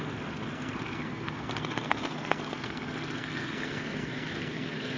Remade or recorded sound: remade